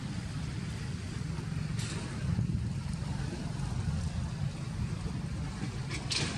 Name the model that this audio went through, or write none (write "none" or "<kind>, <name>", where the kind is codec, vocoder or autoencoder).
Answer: none